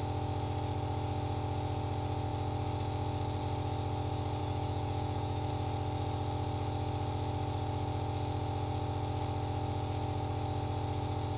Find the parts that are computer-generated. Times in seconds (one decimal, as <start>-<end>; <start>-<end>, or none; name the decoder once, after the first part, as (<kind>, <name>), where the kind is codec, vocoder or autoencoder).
4.4-5.5 (autoencoder, DAC-VAE)

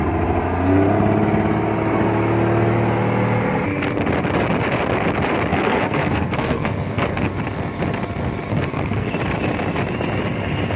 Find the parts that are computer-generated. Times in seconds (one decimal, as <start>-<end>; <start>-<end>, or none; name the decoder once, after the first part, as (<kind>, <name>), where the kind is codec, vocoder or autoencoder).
5.5-7.3 (codec, SNAC); 8.5-9.1

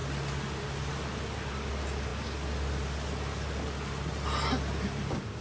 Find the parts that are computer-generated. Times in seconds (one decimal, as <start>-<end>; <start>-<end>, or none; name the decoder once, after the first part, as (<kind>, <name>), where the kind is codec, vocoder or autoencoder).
none

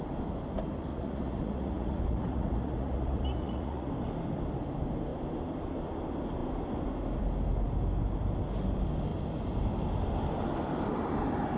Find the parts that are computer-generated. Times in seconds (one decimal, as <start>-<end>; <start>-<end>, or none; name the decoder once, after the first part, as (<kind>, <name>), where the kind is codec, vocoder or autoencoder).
0.9-3.9 (vocoder, Vocos)

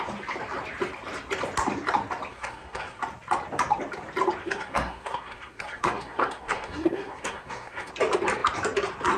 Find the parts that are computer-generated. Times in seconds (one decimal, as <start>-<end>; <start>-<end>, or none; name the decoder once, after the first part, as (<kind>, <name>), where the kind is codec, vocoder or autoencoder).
2.3-3.0 (codec, SNAC); 4.4-7.9

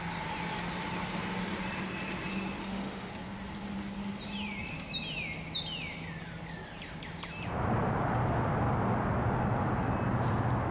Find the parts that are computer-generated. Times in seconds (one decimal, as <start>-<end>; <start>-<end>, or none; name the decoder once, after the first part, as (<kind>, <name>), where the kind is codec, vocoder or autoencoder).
2.6-3.1 (autoencoder, DAC-VAE)

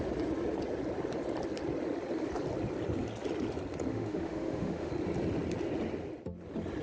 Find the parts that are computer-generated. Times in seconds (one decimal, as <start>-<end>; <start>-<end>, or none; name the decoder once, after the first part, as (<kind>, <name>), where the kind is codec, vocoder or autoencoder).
3.9-4.9 (autoencoder, DAC-VAE)

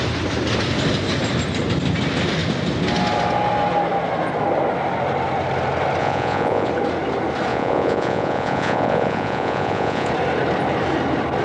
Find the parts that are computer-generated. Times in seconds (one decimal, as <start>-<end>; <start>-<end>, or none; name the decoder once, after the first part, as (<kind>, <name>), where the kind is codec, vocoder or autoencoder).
6.0-6.7 (vocoder, Vocos); 7.5-10.1